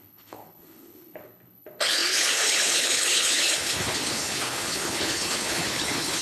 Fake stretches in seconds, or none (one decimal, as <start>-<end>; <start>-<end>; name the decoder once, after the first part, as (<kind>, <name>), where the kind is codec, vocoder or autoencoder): 0.0-6.2 (codec, HILCodec)